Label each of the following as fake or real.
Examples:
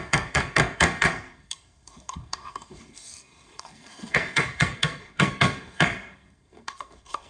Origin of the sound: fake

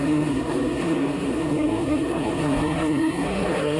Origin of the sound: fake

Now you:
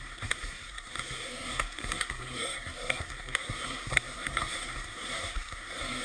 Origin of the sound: fake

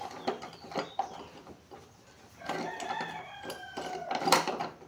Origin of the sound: real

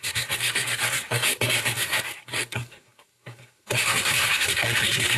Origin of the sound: fake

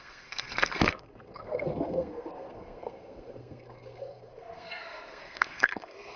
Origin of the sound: fake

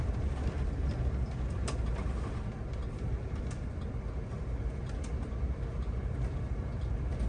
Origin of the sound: real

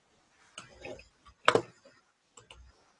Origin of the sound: real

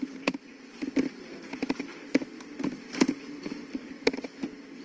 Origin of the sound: real